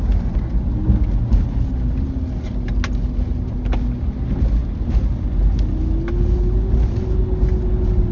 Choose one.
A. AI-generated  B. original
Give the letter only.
B